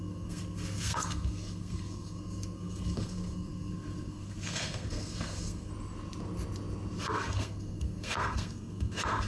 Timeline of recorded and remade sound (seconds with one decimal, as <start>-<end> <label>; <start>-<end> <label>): 0.0-5.7 remade; 5.7-7.0 recorded; 7.0-9.3 remade